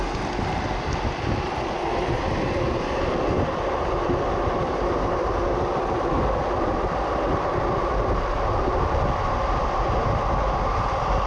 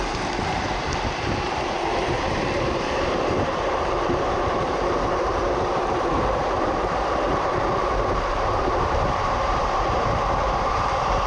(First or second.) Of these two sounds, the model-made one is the second